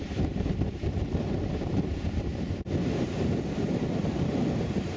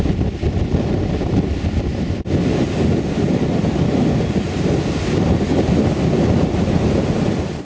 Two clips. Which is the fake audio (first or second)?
first